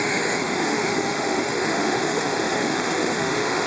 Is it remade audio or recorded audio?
remade